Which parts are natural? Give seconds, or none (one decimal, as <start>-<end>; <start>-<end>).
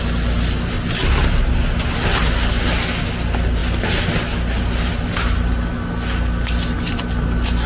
0.0-7.7